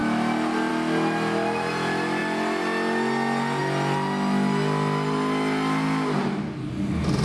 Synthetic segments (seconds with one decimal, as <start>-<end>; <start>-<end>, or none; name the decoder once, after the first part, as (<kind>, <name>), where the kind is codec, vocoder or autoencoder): none

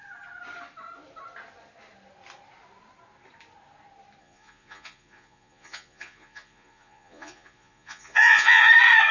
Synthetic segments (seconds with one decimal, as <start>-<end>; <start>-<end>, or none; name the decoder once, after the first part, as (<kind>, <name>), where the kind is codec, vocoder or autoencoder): 4.2-8.7 (vocoder, Vocos)

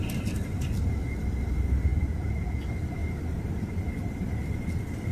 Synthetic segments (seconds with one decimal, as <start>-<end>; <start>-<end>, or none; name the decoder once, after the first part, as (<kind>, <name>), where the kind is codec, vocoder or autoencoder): 1.9-2.6 (vocoder, Vocos)

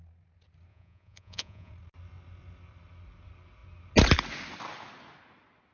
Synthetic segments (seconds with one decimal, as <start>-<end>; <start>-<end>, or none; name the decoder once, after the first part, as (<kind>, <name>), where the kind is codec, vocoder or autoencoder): 0.7-1.7 (vocoder, Vocos)

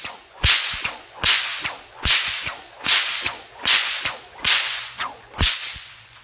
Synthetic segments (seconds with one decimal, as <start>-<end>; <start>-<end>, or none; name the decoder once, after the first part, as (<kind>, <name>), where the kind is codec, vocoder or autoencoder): 0.0-6.2 (vocoder, Vocos)

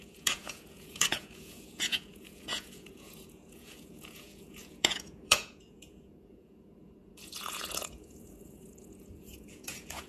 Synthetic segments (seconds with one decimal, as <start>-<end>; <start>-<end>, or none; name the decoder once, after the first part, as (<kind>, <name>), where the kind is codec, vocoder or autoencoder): 0.0-10.1 (vocoder, Vocos)

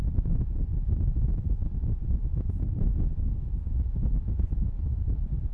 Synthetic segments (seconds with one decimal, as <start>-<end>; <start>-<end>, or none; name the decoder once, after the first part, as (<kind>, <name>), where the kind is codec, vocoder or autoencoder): none